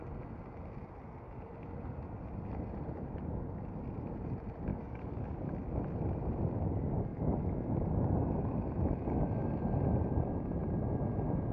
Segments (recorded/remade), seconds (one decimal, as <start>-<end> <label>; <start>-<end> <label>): 0.0-4.7 recorded; 4.7-5.5 remade; 5.5-11.5 recorded

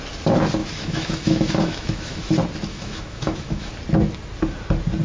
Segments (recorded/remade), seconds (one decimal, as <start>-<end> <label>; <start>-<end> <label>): 0.0-0.6 recorded; 0.6-2.3 remade; 2.3-2.7 recorded; 2.7-3.7 remade; 3.7-5.0 recorded